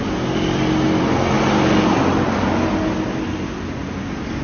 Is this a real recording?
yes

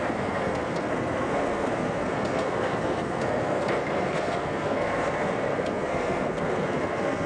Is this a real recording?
no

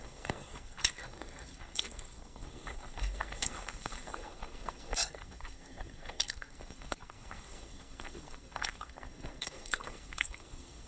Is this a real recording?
no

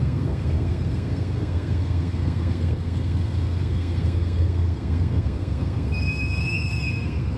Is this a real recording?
no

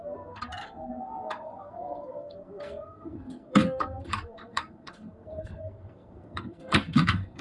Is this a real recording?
no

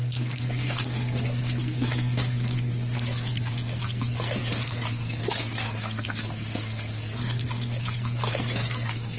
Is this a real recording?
no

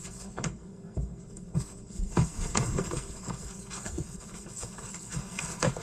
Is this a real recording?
no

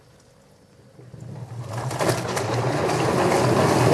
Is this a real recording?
yes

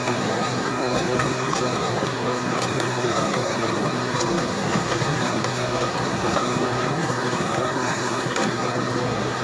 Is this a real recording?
no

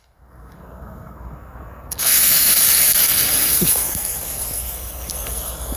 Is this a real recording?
no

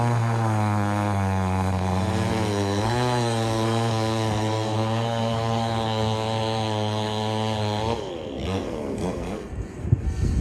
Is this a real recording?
no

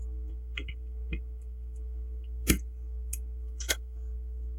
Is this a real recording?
no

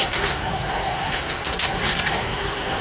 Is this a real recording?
no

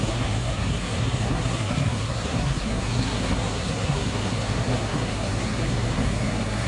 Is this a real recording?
no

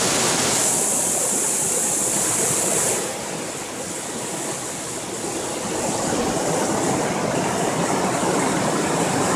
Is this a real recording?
yes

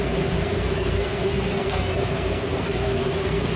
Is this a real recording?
no